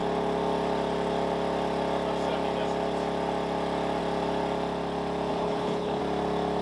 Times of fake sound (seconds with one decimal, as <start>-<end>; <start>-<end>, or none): 5.3-6.0